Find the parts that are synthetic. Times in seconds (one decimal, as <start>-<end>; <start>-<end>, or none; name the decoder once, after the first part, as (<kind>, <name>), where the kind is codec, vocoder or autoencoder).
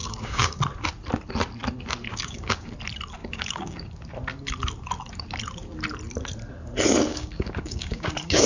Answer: 0.0-0.6 (codec, DAC); 2.1-2.7; 3.2-3.9; 7.1-8.5